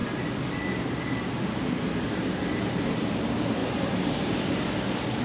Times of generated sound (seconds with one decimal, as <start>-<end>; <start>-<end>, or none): 0.0-3.1; 3.6-4.7